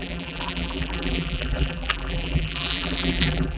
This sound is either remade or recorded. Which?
remade